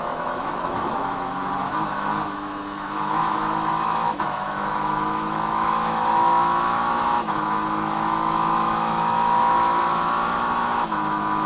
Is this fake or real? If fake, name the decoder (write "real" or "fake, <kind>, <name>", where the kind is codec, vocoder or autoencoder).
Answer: fake, autoencoder, DAC-VAE